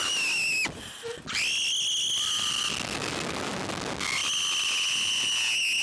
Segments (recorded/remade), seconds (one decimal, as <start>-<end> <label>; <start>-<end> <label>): 0.0-5.8 recorded